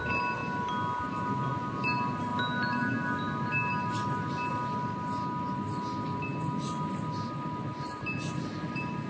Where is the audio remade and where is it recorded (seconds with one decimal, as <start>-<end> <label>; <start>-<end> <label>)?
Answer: 0.0-9.1 recorded